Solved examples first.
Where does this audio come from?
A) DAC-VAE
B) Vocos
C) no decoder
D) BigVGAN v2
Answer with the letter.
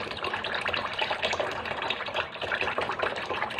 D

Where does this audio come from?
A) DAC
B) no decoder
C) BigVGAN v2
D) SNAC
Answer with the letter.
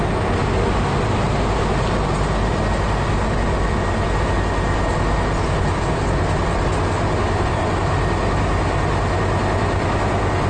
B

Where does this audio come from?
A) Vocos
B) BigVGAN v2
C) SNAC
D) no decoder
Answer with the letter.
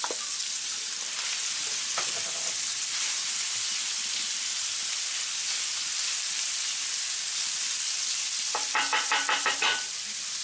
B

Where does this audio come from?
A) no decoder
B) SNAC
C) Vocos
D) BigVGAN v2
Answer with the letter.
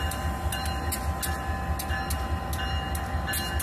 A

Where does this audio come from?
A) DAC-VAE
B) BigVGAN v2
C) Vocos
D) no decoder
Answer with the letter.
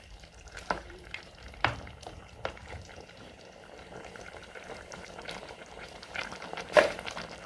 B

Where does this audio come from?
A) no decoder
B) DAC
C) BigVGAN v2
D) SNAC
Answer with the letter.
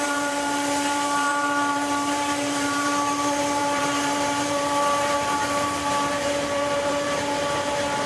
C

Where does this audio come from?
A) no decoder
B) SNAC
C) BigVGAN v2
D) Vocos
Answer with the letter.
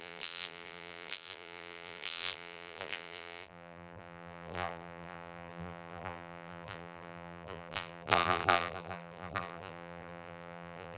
C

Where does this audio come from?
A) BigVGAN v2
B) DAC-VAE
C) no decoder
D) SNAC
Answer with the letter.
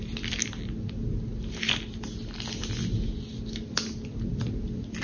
C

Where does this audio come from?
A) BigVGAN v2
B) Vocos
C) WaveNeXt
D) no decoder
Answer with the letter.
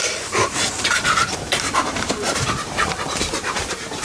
A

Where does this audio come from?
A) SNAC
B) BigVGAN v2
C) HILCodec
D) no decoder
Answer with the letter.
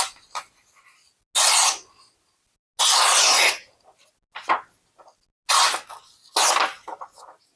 D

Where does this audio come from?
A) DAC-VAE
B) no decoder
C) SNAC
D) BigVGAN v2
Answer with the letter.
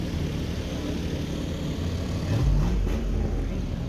B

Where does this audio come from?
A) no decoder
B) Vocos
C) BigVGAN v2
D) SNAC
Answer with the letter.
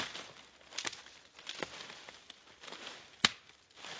A